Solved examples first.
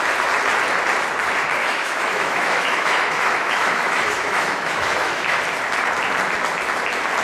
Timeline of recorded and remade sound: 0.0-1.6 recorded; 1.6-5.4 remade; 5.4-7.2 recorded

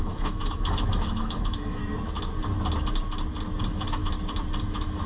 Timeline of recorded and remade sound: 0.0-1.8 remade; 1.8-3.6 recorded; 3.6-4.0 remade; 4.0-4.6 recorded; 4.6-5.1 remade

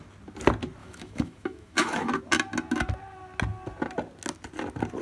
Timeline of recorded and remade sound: 0.0-0.8 recorded; 0.8-2.2 remade; 2.2-5.0 recorded

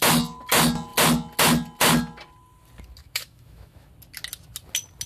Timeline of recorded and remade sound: 0.0-3.0 recorded; 3.0-3.9 remade; 3.9-5.1 recorded

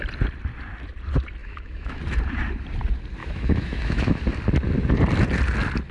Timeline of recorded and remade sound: 0.0-1.4 recorded; 1.4-2.0 remade; 2.0-3.2 recorded; 3.2-4.2 remade; 4.2-5.9 recorded

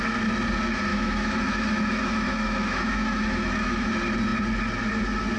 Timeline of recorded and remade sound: 0.0-0.9 recorded; 0.9-3.9 remade; 3.9-5.4 recorded